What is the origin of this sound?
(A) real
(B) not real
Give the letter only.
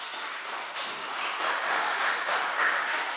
B